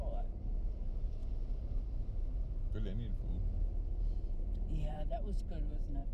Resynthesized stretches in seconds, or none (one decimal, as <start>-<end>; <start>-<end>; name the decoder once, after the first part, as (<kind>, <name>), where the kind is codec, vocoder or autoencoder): 0.0-1.2 (vocoder, BigVGAN v2); 4.9-6.1